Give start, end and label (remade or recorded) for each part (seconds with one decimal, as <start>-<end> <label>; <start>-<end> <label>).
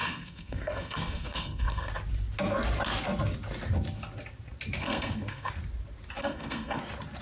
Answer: 0.0-1.9 remade; 1.9-4.8 recorded; 4.8-5.5 remade; 5.5-6.2 recorded; 6.2-6.8 remade; 6.8-7.2 recorded